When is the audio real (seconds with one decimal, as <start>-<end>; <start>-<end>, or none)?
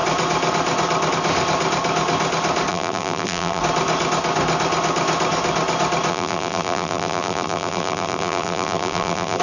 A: 0.0-2.7; 3.6-6.1